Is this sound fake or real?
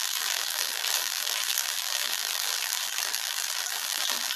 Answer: fake